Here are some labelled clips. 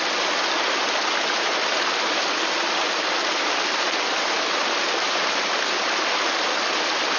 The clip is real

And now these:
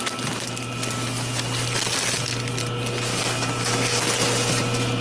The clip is real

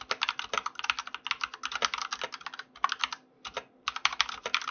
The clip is real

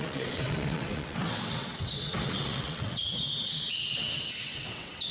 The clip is fake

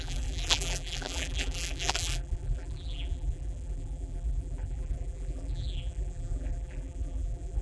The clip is fake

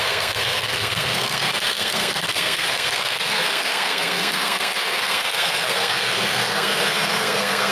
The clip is fake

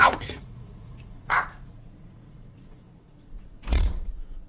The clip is fake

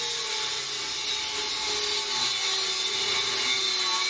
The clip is real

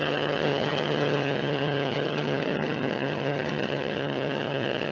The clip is fake